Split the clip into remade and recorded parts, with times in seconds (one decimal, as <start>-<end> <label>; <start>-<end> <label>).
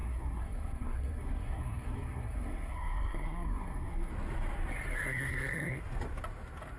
0.0-4.1 remade; 4.1-4.9 recorded; 4.9-5.8 remade; 5.8-6.8 recorded